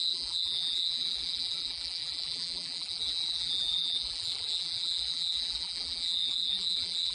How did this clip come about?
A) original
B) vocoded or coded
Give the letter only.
B